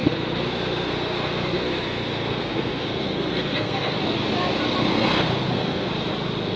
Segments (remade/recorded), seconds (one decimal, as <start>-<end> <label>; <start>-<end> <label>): 0.0-4.0 remade; 4.0-4.9 recorded; 4.9-5.9 remade; 5.9-6.6 recorded